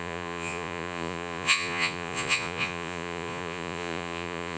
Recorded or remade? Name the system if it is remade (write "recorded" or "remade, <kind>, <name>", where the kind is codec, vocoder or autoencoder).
remade, vocoder, Vocos